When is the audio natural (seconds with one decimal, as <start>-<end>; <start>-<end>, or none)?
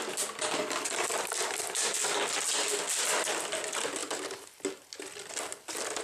0.0-4.0; 4.5-6.0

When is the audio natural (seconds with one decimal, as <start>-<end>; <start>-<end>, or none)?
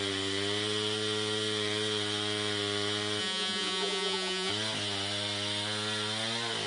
0.0-3.2; 4.5-6.7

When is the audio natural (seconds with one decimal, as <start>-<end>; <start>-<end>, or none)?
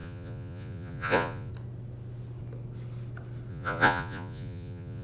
1.5-3.5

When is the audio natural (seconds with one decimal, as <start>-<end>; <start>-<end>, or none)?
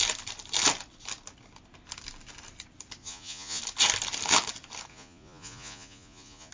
0.0-3.0; 3.6-4.9